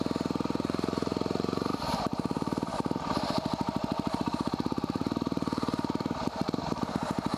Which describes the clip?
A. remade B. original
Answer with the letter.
A